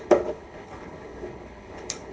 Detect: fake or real fake